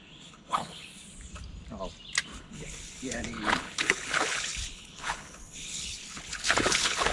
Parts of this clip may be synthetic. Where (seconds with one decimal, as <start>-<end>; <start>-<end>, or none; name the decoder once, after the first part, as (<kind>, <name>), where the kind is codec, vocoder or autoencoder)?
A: 0.0-0.9 (codec, HILCodec); 2.4-7.1